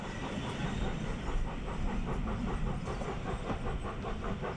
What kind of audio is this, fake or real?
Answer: real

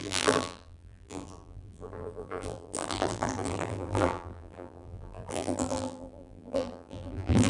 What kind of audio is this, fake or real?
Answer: fake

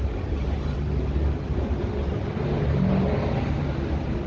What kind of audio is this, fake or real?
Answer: real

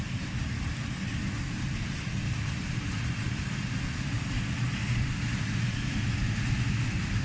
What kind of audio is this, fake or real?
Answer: real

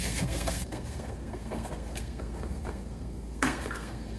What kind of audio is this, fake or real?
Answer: fake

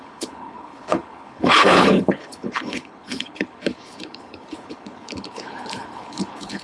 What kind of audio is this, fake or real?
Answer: fake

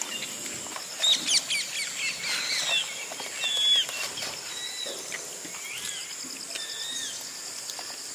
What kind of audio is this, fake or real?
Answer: real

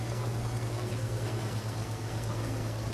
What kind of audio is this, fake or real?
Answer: fake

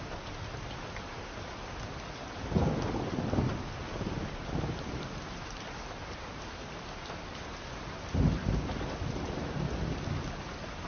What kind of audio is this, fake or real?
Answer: real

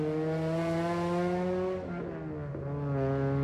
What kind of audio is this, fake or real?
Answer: real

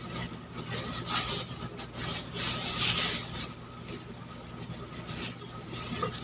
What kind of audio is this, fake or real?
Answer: real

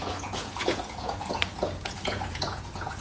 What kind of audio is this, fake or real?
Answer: fake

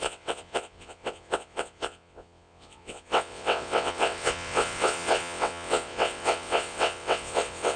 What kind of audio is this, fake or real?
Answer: fake